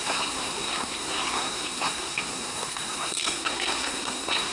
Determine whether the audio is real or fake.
fake